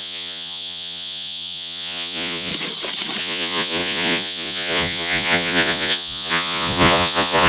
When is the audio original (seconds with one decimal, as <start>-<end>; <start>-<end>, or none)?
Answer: 2.5-3.2